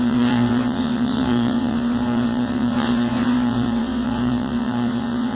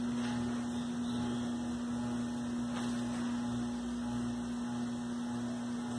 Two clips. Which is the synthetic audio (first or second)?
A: first